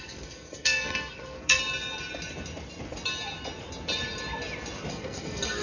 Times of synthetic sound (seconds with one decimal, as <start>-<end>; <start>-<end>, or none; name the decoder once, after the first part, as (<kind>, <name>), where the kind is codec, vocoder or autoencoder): 0.0-1.6 (codec, SNAC); 4.9-5.6